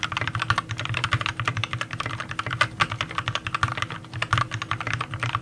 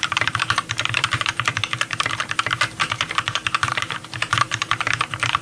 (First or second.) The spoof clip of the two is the second